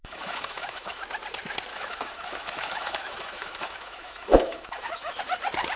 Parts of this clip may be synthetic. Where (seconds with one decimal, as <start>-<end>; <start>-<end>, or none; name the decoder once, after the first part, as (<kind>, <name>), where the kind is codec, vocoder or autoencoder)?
0.0-1.0 (autoencoder, DAC-VAE); 1.7-5.2